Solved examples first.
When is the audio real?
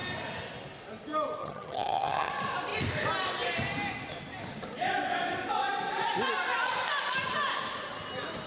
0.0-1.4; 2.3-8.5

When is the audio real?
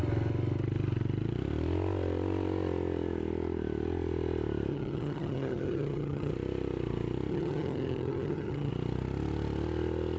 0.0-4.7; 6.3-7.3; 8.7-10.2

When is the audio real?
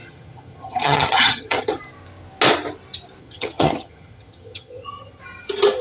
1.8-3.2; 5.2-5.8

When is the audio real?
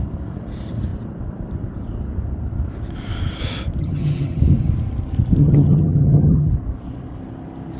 0.0-3.8; 4.4-5.4; 6.5-7.8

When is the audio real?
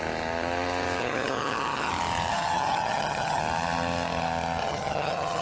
0.0-1.0; 1.9-2.3; 3.4-4.6